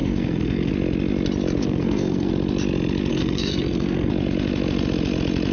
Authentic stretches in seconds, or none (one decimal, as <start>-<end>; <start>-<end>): 0.7-1.6; 2.3-3.1; 4.1-5.5